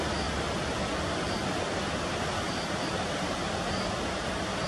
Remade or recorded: recorded